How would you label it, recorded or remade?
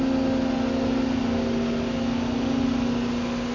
recorded